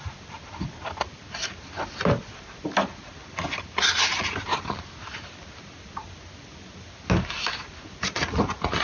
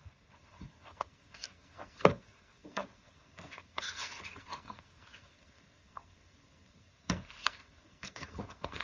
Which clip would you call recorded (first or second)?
first